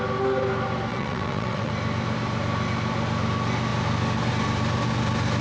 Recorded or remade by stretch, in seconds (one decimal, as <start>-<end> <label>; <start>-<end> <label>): 0.0-0.9 recorded; 0.9-1.7 remade; 1.7-5.4 recorded